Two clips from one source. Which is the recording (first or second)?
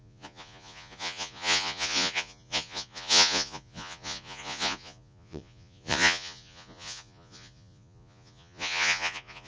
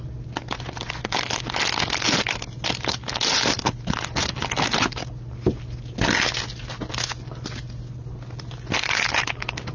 second